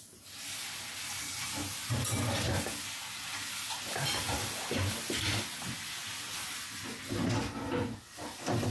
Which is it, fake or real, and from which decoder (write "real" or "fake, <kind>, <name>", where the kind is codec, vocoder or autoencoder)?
real